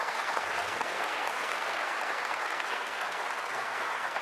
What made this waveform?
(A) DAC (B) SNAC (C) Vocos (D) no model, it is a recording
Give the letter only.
B